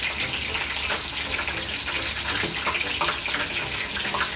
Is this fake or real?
real